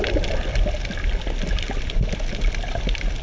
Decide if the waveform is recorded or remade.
recorded